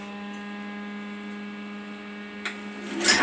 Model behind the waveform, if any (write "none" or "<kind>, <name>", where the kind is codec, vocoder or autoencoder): none